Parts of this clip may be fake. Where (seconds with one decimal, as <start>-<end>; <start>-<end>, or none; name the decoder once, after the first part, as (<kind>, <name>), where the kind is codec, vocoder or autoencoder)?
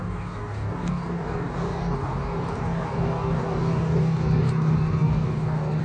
0.0-5.8 (codec, DAC)